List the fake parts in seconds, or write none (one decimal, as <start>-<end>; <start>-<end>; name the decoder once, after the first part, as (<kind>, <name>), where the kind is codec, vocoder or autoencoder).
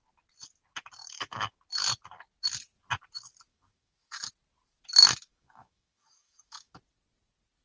1.0-1.6 (autoencoder, DAC-VAE); 3.5-4.3; 5.0-6.8